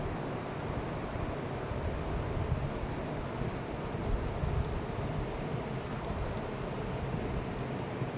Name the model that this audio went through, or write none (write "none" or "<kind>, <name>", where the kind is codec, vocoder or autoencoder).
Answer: none